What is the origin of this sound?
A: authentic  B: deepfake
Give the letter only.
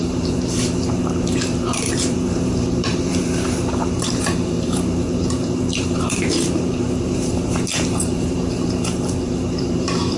B